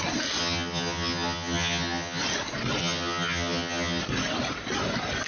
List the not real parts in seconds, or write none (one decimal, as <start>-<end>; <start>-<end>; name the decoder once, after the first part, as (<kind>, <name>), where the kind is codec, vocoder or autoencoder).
0.4-2.2 (vocoder, HiFi-GAN); 2.8-4.0